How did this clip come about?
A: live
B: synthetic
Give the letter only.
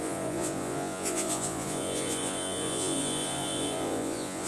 B